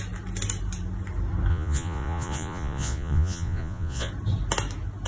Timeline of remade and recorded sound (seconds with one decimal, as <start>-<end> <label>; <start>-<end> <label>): 0.0-1.5 recorded; 1.5-4.1 remade; 4.1-5.1 recorded